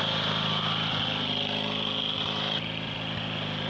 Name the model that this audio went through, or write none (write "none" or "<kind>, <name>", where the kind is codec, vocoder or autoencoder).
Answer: none